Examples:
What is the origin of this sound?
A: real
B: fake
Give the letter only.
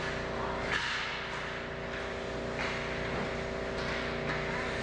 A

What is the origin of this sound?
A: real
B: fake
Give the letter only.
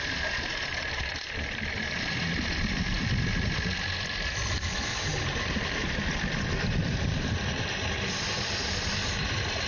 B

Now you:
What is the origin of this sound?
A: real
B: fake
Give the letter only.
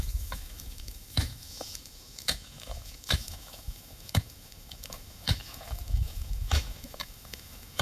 B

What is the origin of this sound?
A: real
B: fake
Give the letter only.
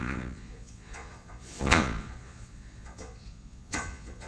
B